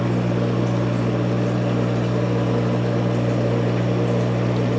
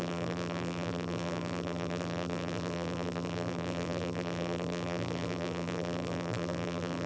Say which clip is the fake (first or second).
second